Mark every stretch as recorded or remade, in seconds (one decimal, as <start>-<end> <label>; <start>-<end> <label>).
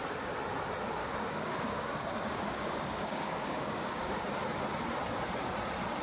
0.0-1.0 recorded; 1.0-4.2 remade; 4.2-6.0 recorded